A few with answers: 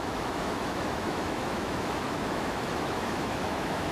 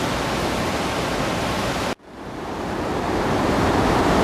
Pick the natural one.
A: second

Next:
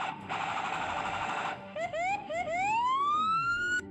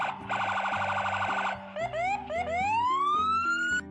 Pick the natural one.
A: second